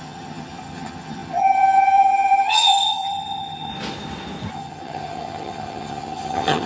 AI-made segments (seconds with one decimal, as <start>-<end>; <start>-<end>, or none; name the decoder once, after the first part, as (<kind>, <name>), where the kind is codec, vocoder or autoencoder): 0.0-3.7 (vocoder, HiFi-GAN); 4.5-6.7